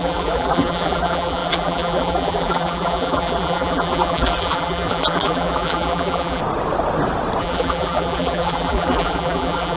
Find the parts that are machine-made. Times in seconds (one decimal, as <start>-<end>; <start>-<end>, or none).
0.0-6.4; 7.4-9.8